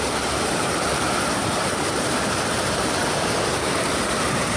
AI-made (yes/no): no